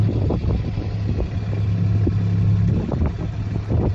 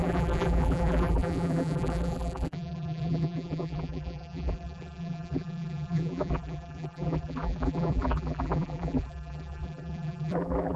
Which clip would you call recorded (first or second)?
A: first